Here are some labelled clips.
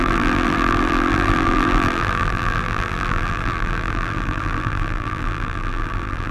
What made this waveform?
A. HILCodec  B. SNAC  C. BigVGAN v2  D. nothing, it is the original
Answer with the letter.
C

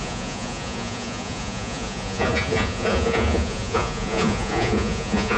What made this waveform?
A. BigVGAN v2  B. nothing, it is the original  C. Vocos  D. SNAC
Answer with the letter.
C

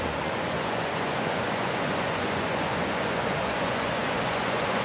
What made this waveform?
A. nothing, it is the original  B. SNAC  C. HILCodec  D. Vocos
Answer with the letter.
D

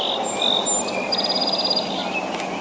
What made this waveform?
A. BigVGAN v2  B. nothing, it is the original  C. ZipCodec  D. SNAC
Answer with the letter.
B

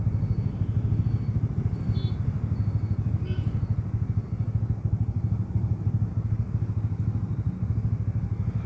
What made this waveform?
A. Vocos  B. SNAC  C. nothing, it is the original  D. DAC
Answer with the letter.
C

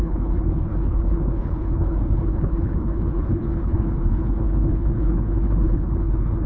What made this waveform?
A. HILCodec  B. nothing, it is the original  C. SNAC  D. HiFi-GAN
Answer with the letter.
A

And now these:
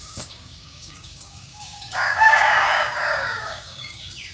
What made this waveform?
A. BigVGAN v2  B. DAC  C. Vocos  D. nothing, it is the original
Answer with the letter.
B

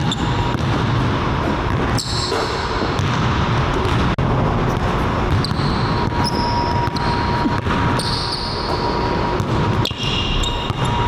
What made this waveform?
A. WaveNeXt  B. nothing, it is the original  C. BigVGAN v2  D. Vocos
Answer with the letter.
B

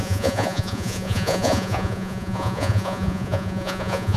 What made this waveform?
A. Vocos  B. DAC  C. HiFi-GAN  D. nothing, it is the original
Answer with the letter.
A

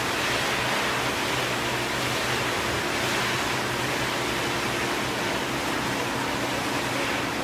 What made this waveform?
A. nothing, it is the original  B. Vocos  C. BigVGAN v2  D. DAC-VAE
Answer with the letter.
A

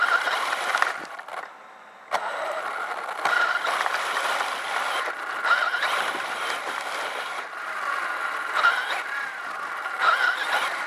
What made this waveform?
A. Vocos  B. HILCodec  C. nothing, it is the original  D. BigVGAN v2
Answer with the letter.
D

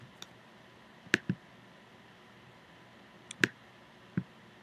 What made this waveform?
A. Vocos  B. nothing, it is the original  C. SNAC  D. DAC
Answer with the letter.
B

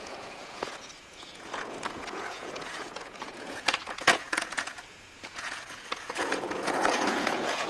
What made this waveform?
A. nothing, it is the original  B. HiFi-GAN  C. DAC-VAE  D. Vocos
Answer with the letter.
D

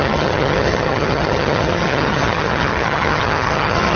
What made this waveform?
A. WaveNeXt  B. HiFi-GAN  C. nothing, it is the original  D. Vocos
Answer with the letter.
B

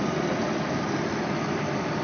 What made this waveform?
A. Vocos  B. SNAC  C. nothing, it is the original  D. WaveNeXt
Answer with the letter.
C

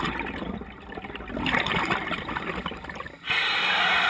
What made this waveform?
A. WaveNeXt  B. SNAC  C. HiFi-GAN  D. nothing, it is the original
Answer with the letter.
D